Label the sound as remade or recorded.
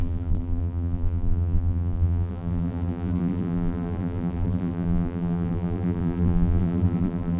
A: remade